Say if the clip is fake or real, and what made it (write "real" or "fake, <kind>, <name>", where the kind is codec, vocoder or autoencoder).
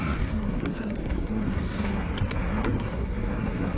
fake, codec, SNAC